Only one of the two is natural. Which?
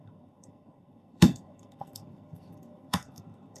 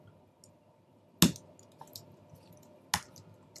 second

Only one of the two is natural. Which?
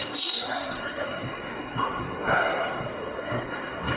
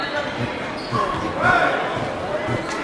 second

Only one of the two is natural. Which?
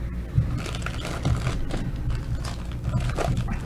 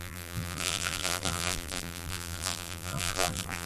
first